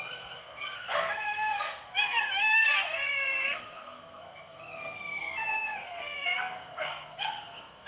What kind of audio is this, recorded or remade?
remade